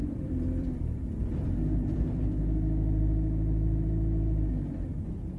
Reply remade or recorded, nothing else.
remade